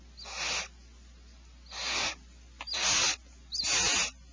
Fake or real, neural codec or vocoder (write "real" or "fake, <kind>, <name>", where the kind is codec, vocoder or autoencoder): real